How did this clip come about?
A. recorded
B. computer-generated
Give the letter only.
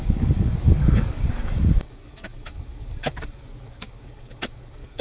B